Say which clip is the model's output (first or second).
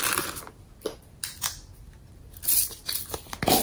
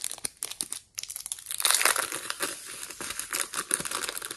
first